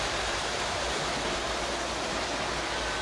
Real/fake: real